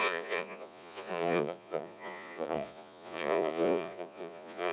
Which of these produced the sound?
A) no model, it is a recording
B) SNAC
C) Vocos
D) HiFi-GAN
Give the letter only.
C